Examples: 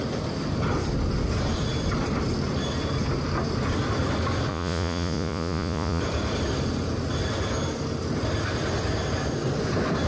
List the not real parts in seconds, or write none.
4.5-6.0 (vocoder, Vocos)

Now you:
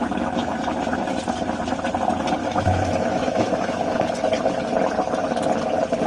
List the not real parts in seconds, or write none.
2.4-4.0 (autoencoder, DAC-VAE)

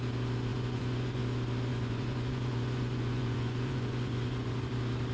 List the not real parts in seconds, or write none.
0.5-1.2 (vocoder, Vocos); 1.7-4.6

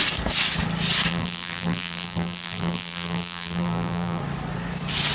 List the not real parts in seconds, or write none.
1.1-4.2 (vocoder, BigVGAN v2)